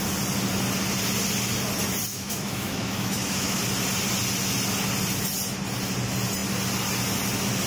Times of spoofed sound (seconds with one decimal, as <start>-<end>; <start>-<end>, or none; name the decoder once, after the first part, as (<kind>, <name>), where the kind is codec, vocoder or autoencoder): 2.1-3.6 (autoencoder, DAC-VAE)